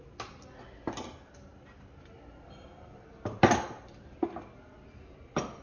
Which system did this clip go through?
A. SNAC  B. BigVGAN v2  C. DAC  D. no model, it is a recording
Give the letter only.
D